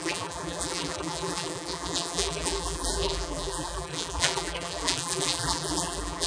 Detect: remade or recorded remade